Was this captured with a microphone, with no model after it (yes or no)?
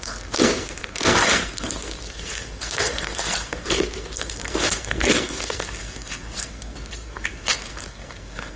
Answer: no